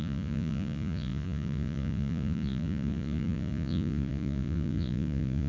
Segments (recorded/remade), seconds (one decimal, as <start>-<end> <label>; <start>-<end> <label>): 0.0-5.5 remade